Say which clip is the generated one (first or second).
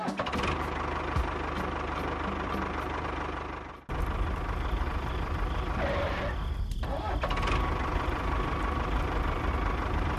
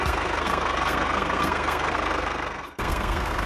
second